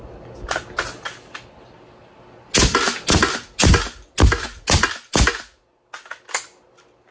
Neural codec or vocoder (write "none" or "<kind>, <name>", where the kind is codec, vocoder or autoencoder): none